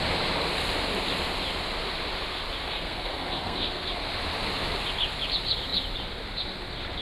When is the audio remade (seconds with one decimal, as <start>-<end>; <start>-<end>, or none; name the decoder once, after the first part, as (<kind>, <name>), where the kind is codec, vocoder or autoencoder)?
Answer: 2.6-3.9 (codec, SNAC)